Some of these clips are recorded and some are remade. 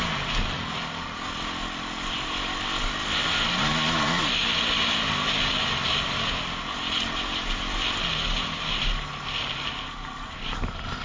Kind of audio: recorded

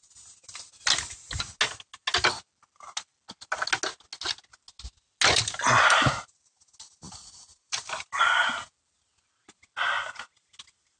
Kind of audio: recorded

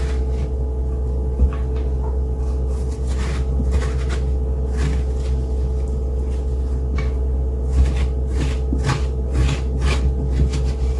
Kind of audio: recorded